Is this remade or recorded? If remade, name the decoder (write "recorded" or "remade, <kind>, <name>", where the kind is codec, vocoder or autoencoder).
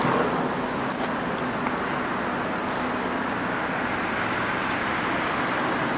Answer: recorded